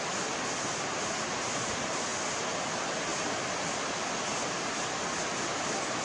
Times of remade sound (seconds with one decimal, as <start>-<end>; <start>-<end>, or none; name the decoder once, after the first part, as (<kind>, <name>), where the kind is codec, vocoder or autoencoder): none